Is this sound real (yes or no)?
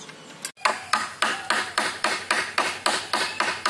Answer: yes